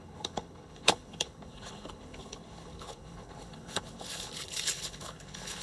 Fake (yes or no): yes